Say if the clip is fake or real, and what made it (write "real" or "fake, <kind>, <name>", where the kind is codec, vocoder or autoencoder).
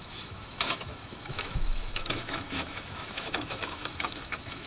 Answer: fake, autoencoder, DAC-VAE